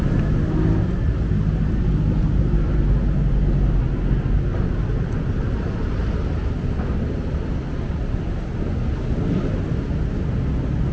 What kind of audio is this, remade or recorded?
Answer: recorded